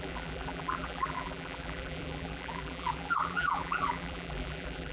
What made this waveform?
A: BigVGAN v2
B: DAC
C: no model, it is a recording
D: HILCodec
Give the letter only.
A